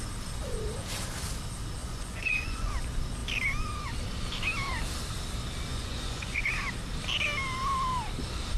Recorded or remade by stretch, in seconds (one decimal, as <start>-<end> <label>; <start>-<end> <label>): 0.0-1.8 recorded; 1.8-2.7 remade; 2.7-5.7 recorded; 5.7-6.5 remade; 6.5-8.6 recorded